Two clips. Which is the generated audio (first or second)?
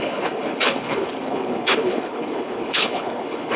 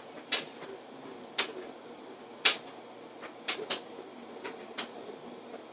first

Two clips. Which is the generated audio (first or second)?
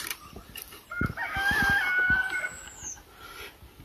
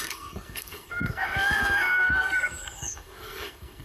second